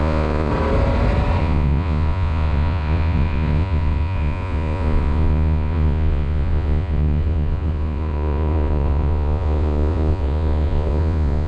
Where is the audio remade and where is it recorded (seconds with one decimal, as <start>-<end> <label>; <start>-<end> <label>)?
0.0-0.5 remade; 0.5-1.4 recorded; 1.4-11.5 remade